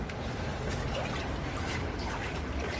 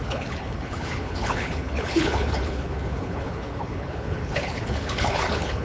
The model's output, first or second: second